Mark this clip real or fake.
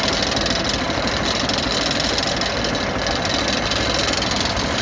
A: real